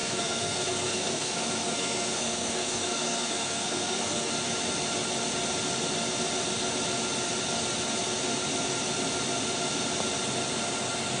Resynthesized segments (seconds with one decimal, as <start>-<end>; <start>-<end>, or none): 0.0-4.3